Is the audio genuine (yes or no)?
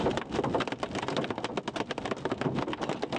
yes